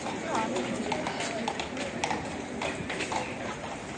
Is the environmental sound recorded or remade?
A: recorded